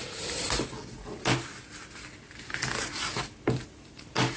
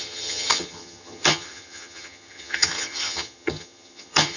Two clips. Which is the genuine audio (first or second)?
first